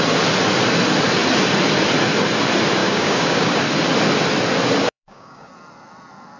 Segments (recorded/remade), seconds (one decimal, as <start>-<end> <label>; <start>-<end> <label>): 0.0-2.8 recorded; 2.8-3.6 remade; 3.6-4.8 recorded; 4.8-5.5 remade; 5.5-6.4 recorded